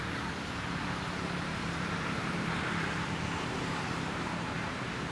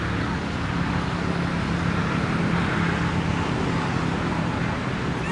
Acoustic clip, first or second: second